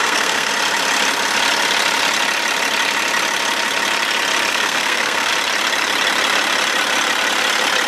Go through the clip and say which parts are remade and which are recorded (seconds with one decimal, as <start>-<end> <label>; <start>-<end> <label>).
0.0-0.5 remade; 0.5-4.5 recorded; 4.5-5.3 remade; 5.3-7.9 recorded